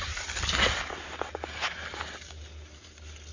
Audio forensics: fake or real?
real